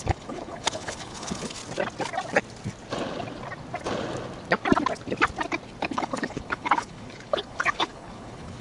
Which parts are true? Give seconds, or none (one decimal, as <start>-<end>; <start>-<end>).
1.6-5.8